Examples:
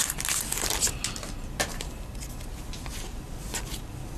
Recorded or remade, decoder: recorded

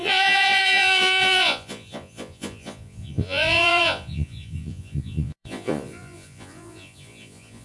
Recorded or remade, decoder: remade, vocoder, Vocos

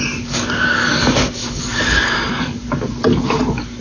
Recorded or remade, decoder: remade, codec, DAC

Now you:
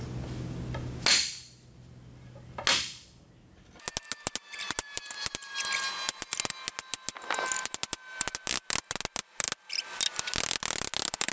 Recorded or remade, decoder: recorded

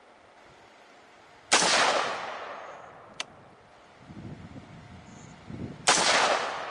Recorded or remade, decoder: recorded